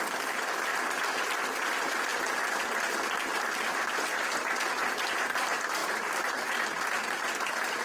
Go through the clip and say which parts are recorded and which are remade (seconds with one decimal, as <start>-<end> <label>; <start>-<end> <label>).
0.0-0.7 remade; 0.7-1.3 recorded; 1.3-5.8 remade; 5.8-7.0 recorded; 7.0-7.8 remade